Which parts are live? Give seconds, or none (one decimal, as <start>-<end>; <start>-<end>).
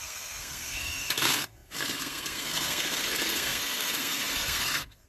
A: none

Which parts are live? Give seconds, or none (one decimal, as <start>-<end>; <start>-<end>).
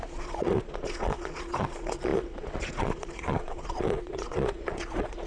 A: none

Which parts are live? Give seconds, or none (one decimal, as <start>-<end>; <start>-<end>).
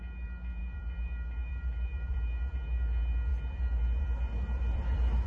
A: 0.0-0.6; 2.8-3.3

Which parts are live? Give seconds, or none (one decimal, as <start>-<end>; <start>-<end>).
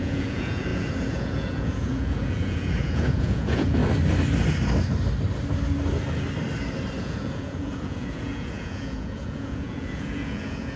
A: 3.8-7.0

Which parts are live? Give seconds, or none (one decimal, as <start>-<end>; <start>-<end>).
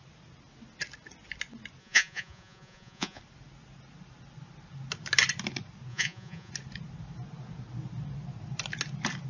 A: 0.0-1.8; 3.2-5.9; 6.5-9.3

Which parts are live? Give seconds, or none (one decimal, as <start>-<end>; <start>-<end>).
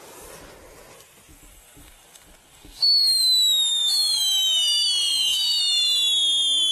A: 0.0-1.3; 3.2-3.7; 4.2-5.0; 5.6-6.7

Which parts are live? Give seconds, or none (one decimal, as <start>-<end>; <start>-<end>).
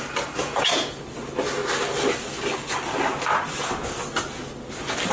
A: 0.0-0.4; 1.0-5.1